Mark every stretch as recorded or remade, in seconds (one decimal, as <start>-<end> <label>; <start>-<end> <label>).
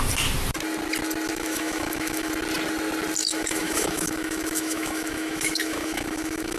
0.0-1.3 recorded; 1.3-2.3 remade; 2.3-3.2 recorded; 3.2-6.6 remade